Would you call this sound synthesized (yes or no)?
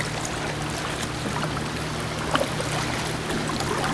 no